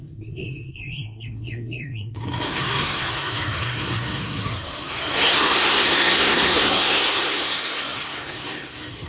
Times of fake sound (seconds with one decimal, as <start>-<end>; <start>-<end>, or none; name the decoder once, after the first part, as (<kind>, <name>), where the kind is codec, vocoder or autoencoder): 0.0-9.1 (codec, SNAC)